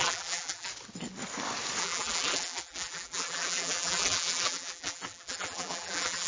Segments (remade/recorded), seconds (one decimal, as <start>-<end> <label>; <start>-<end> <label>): 0.0-0.7 remade; 0.7-1.8 recorded; 1.8-6.3 remade